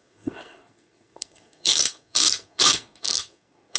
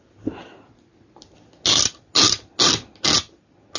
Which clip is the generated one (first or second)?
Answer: first